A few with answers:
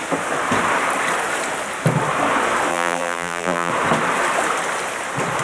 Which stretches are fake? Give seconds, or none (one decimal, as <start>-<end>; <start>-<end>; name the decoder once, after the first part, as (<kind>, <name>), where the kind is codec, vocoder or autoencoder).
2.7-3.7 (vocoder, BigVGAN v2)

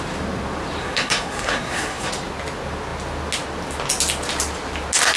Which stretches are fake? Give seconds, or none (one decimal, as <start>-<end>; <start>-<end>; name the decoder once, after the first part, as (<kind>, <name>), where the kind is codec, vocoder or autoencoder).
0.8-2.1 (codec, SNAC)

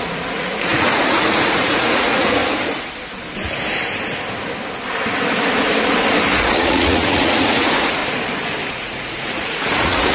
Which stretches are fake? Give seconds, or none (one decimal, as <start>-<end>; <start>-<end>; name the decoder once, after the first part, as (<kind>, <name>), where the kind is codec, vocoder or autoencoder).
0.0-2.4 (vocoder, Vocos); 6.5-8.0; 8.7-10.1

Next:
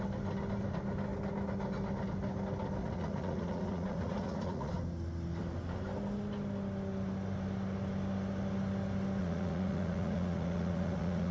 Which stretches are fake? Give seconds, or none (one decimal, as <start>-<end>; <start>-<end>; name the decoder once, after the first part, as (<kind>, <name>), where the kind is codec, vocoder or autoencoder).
2.8-4.7 (vocoder, Vocos); 9.2-11.3

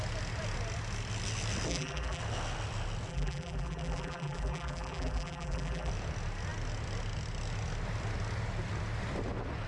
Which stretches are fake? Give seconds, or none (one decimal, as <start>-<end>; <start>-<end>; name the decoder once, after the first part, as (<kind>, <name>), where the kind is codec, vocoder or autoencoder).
1.7-2.2 (vocoder, BigVGAN v2); 3.1-5.9